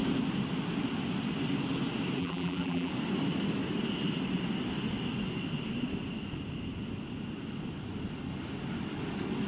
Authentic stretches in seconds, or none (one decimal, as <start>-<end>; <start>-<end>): 0.0-2.2; 2.9-9.5